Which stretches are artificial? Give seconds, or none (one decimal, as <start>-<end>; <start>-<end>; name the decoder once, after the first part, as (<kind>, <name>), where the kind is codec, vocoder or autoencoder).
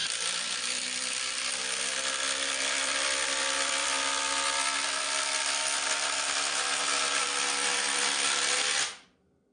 0.0-4.3 (vocoder, BigVGAN v2)